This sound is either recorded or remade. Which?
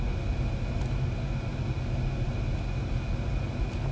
recorded